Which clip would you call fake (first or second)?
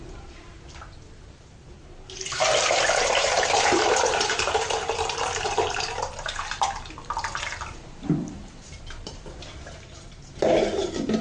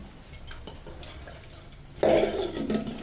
first